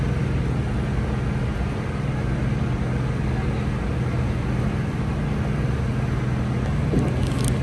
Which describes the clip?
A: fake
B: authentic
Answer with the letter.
B